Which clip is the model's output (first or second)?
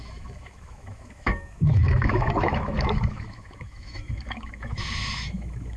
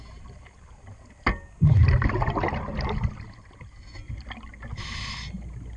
first